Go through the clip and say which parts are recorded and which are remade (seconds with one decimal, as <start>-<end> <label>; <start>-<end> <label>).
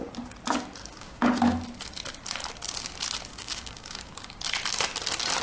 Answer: 0.0-0.8 recorded; 0.8-1.3 remade; 1.3-3.3 recorded; 3.3-4.4 remade; 4.4-5.4 recorded